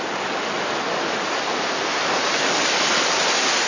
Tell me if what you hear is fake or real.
real